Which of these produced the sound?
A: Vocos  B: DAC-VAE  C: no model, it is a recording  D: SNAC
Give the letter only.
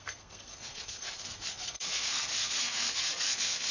D